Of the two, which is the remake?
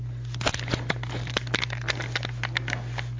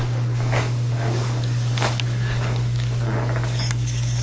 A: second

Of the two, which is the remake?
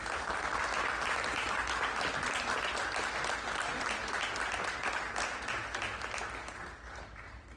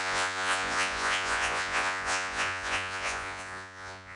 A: second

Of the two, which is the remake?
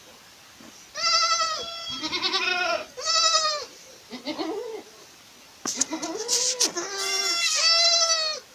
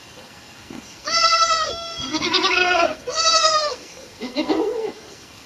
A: second